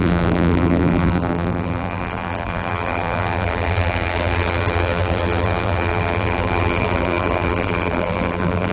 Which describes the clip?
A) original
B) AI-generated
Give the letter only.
B